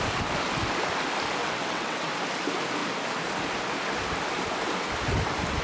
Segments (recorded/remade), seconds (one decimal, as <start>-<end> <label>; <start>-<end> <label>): 0.0-1.4 recorded; 1.4-2.1 remade; 2.1-5.6 recorded